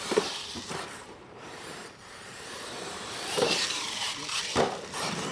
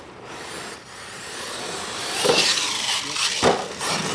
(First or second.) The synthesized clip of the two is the first